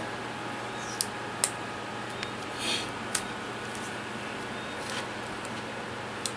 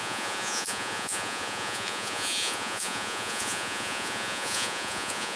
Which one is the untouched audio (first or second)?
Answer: first